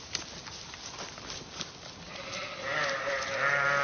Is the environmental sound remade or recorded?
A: recorded